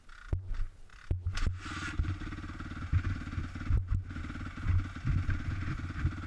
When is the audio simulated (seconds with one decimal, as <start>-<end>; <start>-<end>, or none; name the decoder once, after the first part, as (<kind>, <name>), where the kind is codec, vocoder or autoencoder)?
none